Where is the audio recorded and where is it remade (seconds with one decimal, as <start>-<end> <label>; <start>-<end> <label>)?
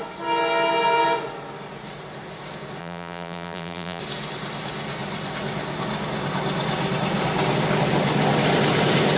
0.0-2.8 recorded; 2.8-4.0 remade; 4.0-9.2 recorded